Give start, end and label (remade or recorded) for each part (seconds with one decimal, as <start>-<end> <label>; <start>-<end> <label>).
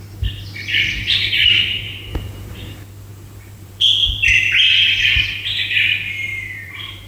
0.0-1.0 recorded; 1.0-2.5 remade; 2.5-3.1 recorded; 3.1-3.9 remade; 3.9-6.3 recorded; 6.3-7.1 remade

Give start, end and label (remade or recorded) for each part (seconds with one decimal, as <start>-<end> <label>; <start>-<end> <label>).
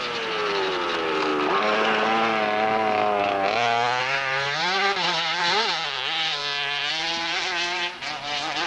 0.0-1.3 remade; 1.3-4.0 recorded; 4.0-6.4 remade; 6.4-6.9 recorded; 6.9-8.7 remade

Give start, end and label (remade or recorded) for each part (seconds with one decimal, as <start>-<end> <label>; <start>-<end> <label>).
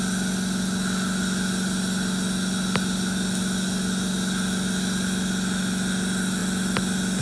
0.0-7.2 recorded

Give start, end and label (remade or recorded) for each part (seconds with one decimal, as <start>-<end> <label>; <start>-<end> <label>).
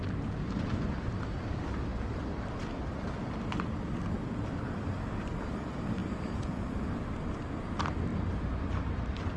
0.0-8.1 remade; 8.1-8.6 recorded; 8.6-9.4 remade